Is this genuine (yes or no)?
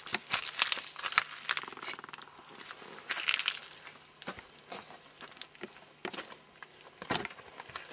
yes